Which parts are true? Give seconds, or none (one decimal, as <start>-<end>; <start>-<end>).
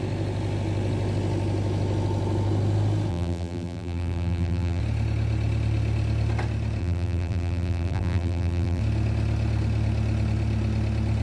0.0-3.1; 4.8-6.8; 8.8-11.2